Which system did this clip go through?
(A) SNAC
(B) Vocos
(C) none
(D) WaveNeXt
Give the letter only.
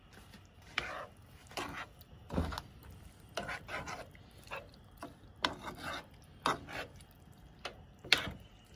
C